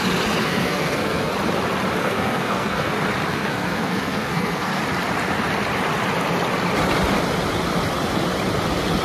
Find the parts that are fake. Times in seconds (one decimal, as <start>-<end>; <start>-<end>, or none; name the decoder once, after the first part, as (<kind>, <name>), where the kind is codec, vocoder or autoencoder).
0.4-1.3 (codec, SNAC); 2.0-2.9; 3.3-4.8